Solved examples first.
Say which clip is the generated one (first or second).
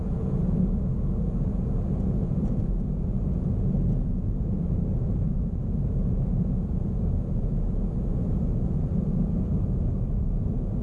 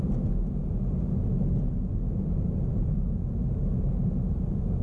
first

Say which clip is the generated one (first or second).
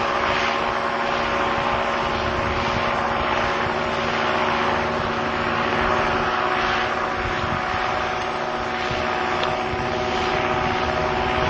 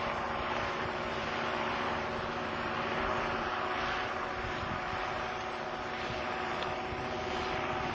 second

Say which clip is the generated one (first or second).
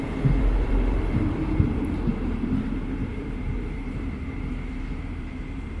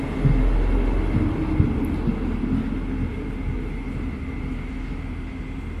first